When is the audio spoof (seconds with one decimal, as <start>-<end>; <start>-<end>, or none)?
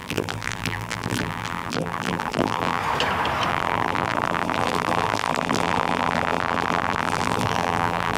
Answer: 0.0-2.8; 3.5-8.2